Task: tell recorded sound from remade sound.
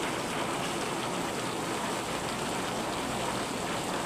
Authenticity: recorded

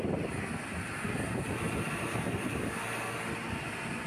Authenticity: recorded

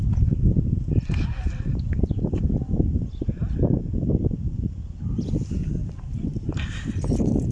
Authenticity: recorded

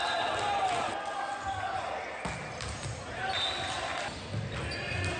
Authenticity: recorded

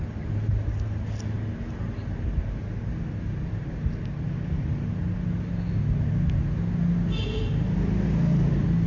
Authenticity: recorded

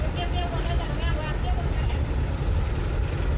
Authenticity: recorded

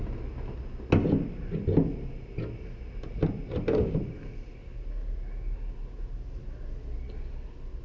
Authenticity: recorded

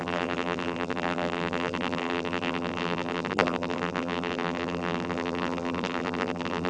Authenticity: remade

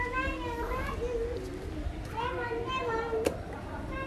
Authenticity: recorded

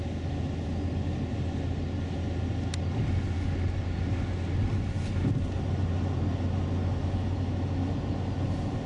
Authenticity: recorded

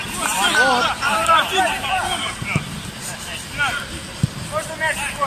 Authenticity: remade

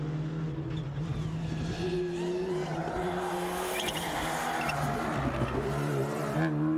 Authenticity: recorded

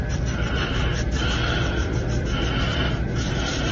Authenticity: remade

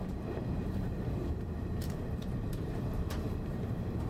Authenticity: remade